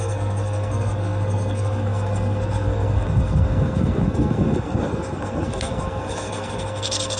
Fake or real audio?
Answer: fake